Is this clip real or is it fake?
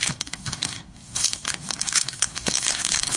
fake